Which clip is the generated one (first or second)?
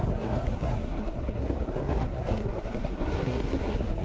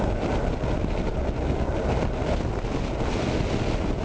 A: first